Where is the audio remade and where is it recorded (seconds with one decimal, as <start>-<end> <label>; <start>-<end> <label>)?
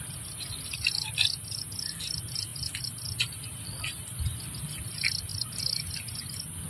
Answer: 0.0-6.7 recorded